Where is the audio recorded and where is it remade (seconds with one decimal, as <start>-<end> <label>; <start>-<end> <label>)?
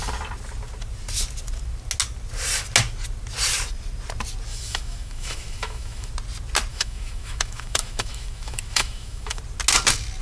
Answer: 0.0-4.5 recorded; 4.5-6.1 remade; 6.1-6.7 recorded; 6.7-9.4 remade; 9.4-10.2 recorded